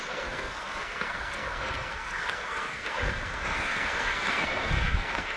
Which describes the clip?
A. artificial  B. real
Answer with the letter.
A